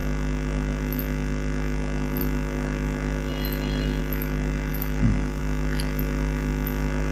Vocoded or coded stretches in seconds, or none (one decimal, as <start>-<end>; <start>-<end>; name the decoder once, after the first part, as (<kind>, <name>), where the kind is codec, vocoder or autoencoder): 4.7-5.4 (autoencoder, DAC-VAE)